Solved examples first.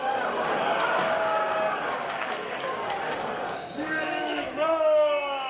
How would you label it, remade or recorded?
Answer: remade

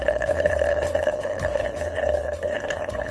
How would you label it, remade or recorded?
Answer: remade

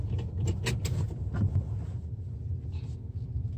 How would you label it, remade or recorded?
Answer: recorded